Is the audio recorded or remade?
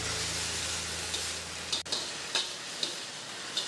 recorded